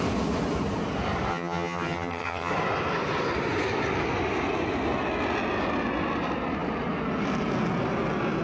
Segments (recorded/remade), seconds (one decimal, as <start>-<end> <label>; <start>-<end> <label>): 0.0-1.3 recorded; 1.3-2.5 remade; 2.5-8.4 recorded